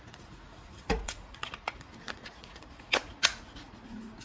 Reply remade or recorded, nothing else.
remade